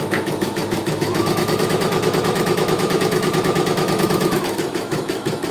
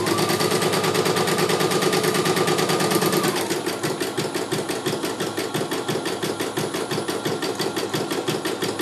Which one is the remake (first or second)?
first